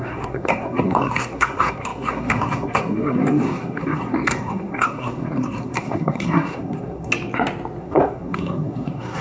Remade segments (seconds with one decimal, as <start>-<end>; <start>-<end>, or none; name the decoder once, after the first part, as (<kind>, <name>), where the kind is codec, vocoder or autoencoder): 0.0-7.1 (codec, SNAC); 7.8-9.2